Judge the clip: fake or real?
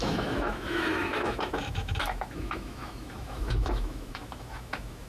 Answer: fake